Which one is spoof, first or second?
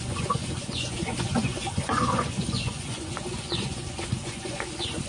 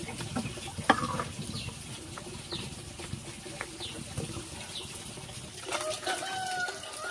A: first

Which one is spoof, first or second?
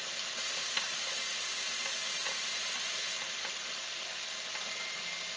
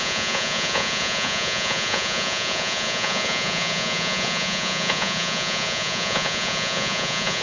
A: second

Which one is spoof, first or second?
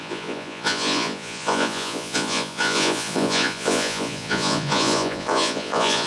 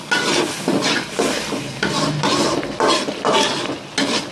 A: first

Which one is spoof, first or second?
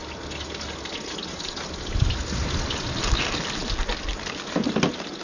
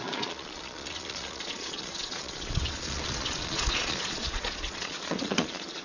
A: second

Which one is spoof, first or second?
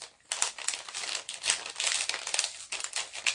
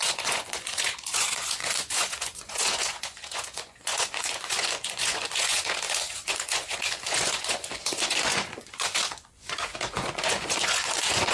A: second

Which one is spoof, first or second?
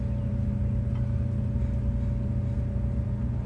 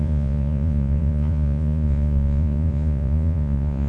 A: second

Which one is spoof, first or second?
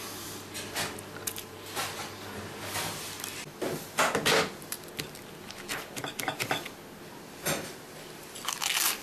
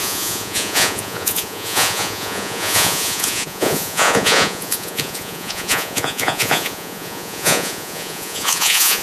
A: second